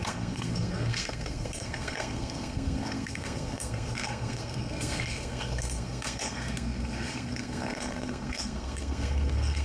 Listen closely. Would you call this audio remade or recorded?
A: remade